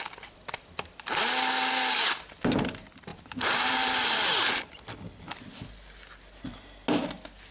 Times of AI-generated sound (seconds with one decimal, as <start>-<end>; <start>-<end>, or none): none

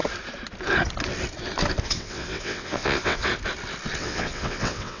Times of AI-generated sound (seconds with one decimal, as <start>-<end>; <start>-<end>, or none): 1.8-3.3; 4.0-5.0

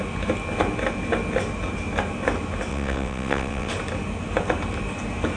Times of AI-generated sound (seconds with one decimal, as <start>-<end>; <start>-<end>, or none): 2.7-3.7